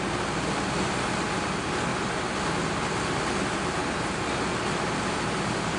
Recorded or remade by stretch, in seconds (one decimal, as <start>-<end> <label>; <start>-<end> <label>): 0.0-5.8 recorded